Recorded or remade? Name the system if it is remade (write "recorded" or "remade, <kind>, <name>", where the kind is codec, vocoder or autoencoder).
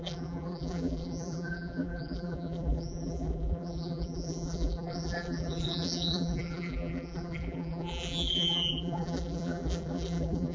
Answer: remade, vocoder, BigVGAN v2